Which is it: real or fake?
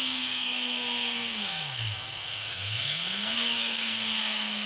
fake